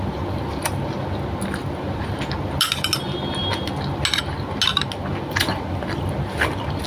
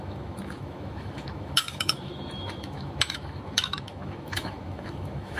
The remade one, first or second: second